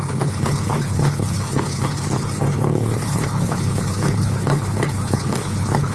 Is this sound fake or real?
fake